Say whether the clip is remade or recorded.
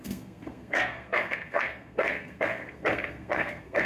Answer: remade